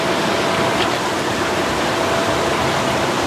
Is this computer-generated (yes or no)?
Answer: yes